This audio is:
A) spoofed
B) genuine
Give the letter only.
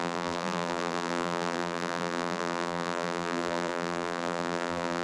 A